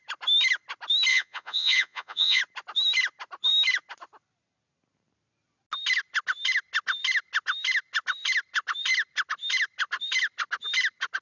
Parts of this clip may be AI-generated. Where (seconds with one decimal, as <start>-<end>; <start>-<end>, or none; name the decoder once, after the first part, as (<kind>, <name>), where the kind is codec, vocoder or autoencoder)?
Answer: 1.1-2.4 (vocoder, Vocos)